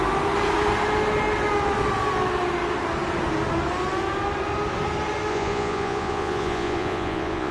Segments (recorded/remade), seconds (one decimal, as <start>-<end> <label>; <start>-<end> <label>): 0.0-5.3 recorded; 5.3-7.5 remade